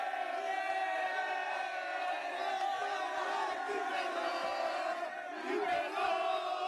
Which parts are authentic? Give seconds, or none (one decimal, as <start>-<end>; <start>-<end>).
0.0-6.7